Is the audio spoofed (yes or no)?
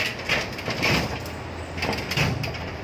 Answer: no